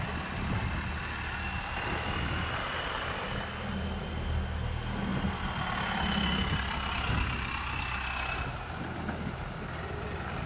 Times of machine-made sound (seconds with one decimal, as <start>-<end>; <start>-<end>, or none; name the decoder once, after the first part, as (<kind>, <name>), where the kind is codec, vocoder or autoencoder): none